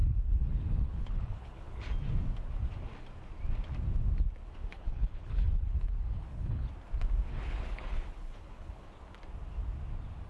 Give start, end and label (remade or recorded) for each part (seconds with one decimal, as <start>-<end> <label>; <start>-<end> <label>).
0.0-1.8 remade; 1.8-4.7 recorded; 4.7-6.7 remade; 6.7-7.3 recorded; 7.3-8.9 remade; 8.9-10.3 recorded